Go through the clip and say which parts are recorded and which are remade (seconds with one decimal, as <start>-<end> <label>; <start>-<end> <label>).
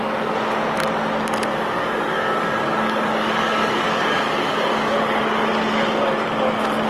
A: 0.0-1.5 recorded; 1.5-5.5 remade; 5.5-6.9 recorded